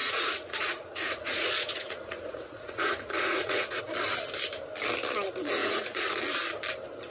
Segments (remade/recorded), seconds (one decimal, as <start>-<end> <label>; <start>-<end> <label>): 0.0-3.8 remade; 3.8-5.6 recorded; 5.6-6.2 remade; 6.2-7.1 recorded